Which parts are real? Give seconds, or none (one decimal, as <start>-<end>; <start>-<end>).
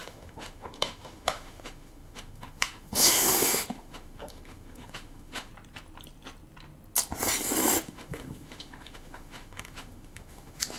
5.5-7.8